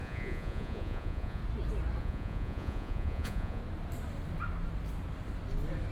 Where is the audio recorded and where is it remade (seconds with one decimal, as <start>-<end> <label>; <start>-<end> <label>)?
0.0-1.4 remade; 1.4-2.0 recorded; 2.0-3.6 remade; 3.6-5.9 recorded